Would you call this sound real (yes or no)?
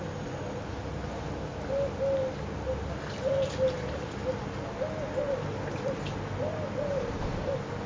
yes